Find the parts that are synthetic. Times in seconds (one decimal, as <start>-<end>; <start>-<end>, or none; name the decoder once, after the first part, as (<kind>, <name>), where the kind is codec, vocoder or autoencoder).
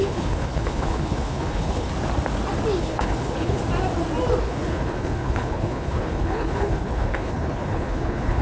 0.0-1.9 (codec, HILCodec); 2.8-3.6; 4.4-8.4